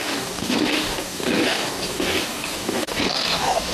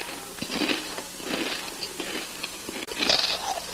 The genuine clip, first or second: second